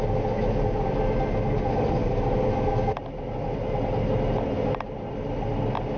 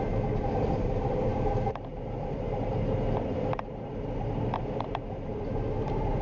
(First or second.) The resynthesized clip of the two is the second